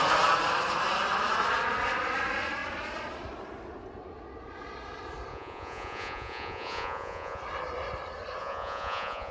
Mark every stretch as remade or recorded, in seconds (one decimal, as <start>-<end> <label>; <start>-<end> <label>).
0.0-5.3 recorded; 5.3-7.4 remade; 7.4-8.4 recorded; 8.4-9.3 remade